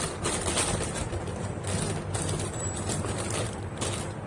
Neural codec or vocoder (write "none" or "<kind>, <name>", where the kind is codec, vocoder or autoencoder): none